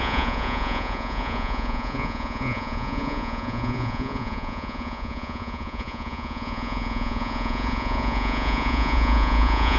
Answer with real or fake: fake